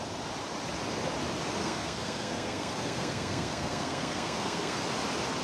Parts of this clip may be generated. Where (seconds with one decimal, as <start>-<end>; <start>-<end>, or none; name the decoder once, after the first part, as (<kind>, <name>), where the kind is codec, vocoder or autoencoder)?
1.6-4.8 (codec, SNAC)